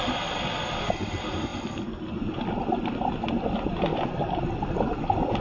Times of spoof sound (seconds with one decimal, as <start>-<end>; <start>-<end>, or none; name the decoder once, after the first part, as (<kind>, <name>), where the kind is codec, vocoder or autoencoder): none